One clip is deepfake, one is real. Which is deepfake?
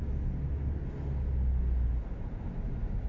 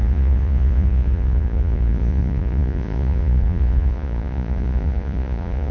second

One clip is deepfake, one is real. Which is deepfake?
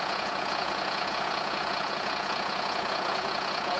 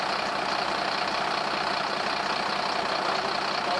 first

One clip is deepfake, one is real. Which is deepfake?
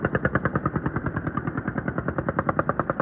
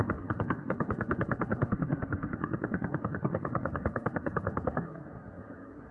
second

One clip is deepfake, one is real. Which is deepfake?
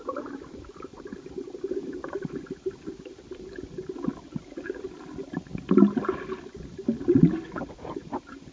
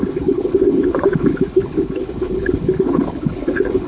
second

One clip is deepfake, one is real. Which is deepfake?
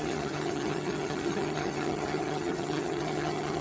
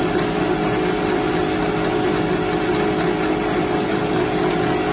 first